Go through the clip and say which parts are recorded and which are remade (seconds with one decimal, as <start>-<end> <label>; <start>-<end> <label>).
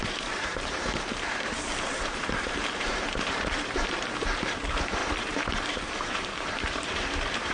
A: 0.0-7.5 remade